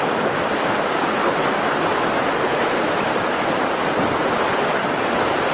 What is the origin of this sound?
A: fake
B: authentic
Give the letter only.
B